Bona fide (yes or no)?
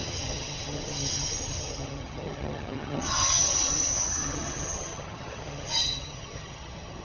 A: no